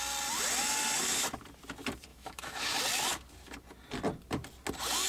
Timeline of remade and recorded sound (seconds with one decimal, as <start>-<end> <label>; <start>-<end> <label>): 0.0-2.1 recorded; 2.1-2.8 remade; 2.8-5.1 recorded